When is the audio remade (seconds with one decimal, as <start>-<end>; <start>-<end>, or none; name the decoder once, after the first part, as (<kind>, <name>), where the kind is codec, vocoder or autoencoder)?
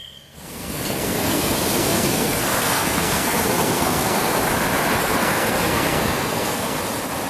0.0-4.4 (codec, SNAC); 5.0-6.8